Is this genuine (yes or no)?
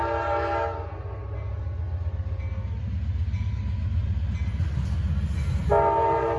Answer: yes